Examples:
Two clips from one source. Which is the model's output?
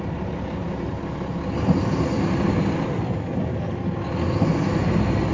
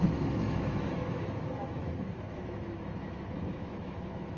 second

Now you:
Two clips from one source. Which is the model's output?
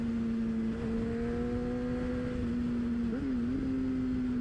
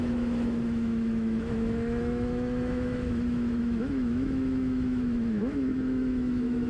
second